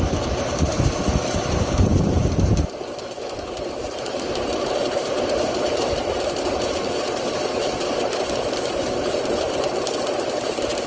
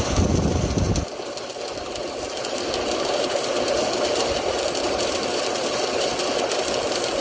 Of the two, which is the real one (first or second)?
second